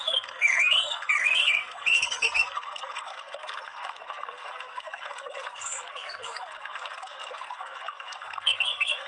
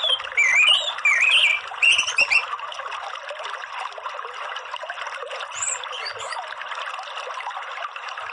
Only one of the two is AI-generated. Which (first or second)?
first